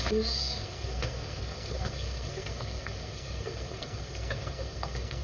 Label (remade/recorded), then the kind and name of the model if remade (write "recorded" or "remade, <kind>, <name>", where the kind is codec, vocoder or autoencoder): remade, codec, SNAC